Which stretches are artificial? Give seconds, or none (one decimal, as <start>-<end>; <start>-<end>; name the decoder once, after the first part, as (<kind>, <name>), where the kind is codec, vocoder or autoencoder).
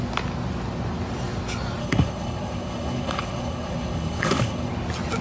1.8-4.7 (codec, HILCodec)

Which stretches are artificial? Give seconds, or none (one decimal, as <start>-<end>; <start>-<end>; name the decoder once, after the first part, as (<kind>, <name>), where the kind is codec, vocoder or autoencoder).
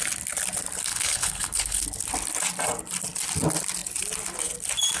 0.9-1.8 (codec, HILCodec)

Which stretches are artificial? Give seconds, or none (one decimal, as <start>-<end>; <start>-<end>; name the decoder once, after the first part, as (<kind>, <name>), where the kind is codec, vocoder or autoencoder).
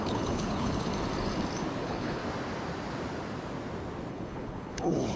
0.0-0.9 (codec, HILCodec); 1.8-2.2; 4.1-5.2